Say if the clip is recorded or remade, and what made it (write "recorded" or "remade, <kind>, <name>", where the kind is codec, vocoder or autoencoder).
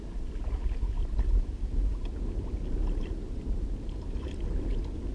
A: recorded